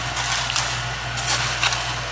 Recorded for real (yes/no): yes